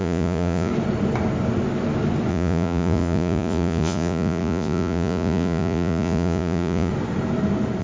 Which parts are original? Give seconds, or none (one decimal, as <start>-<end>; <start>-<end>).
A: 0.7-2.3; 6.9-7.8

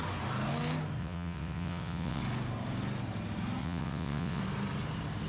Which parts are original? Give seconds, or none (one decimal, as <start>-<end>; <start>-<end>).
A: 0.0-1.0; 2.2-3.6; 4.4-5.3

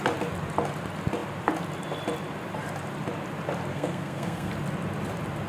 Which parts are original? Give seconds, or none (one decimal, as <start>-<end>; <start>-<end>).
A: 0.0-3.7; 4.5-5.5